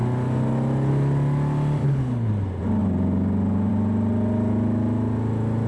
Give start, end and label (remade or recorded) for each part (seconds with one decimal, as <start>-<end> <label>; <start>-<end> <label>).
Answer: 0.0-1.8 recorded; 1.8-2.3 remade; 2.3-5.7 recorded